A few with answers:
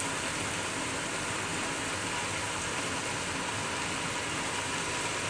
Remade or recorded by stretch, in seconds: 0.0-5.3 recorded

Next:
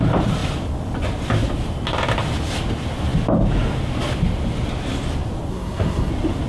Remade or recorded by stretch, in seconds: 0.0-5.5 recorded; 5.5-6.1 remade; 6.1-6.5 recorded

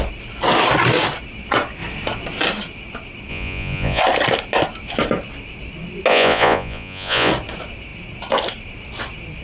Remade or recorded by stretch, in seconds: 0.0-3.3 recorded; 3.3-4.0 remade; 4.0-6.1 recorded; 6.1-7.3 remade; 7.3-9.4 recorded

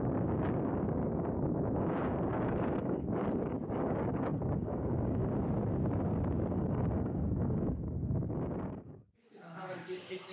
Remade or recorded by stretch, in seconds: 0.0-5.2 remade; 5.2-6.5 recorded; 6.5-10.3 remade

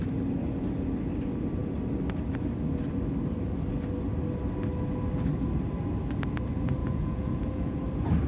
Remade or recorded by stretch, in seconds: 0.0-6.8 recorded; 6.8-7.8 remade; 7.8-8.3 recorded

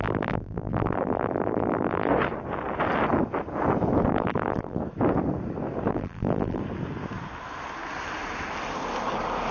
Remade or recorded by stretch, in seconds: 0.0-2.1 remade; 2.1-4.1 recorded; 4.1-4.8 remade; 4.8-5.9 recorded; 5.9-6.6 remade; 6.6-9.5 recorded

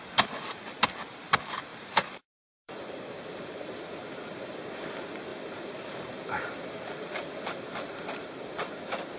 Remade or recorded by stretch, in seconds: 0.0-1.7 recorded; 1.7-3.9 remade; 3.9-5.3 recorded; 5.3-8.3 remade; 8.3-9.2 recorded

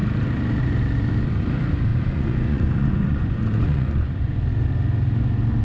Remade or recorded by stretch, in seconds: 0.0-1.9 recorded; 1.9-4.4 remade; 4.4-5.6 recorded